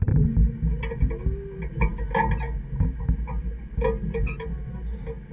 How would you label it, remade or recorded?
recorded